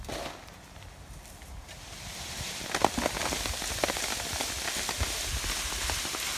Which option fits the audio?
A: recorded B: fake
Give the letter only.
A